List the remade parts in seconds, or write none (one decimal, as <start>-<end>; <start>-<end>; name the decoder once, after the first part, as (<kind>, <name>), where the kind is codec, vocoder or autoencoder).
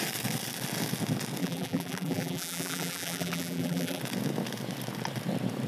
1.4-4.0 (vocoder, BigVGAN v2)